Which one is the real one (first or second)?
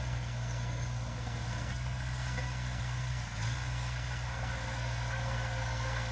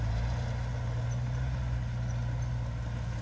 second